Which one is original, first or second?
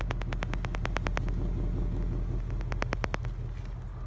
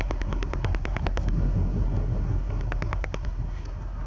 first